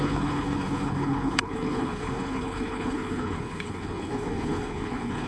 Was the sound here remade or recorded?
remade